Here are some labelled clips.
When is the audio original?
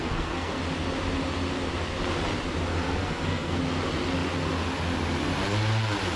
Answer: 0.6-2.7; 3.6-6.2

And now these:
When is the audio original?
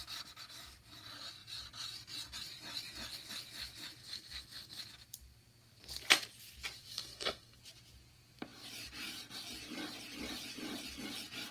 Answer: 0.0-4.0; 4.8-6.9; 7.6-11.5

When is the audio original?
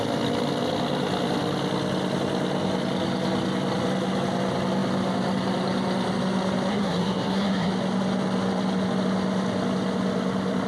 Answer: 0.0-6.7; 7.7-10.7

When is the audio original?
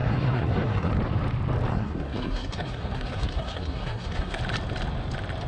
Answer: 0.9-1.7; 4.4-5.5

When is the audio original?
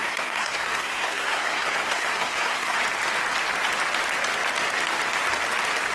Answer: 2.8-5.9